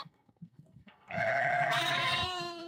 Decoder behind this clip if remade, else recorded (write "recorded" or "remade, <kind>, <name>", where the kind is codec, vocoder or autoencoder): remade, codec, SNAC